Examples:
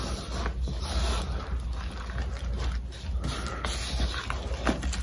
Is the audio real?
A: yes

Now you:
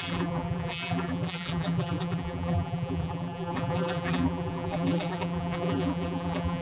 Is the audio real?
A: no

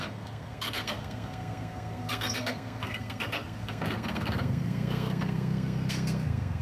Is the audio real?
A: no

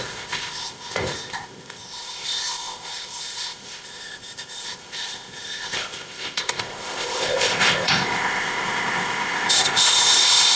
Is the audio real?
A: no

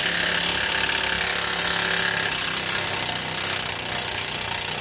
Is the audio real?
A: yes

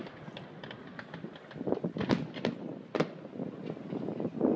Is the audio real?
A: yes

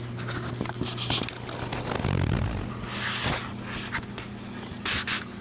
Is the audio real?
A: yes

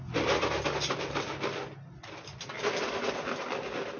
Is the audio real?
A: yes